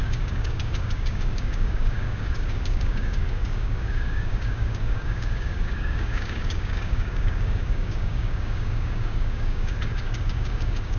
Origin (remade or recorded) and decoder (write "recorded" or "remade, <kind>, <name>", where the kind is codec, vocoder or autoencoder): remade, codec, DAC